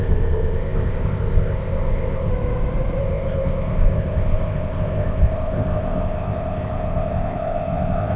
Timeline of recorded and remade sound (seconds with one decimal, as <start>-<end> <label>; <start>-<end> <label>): 0.0-2.3 remade; 2.3-3.0 recorded; 3.0-8.2 remade